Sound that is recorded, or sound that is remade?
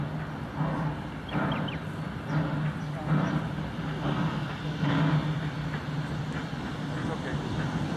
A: recorded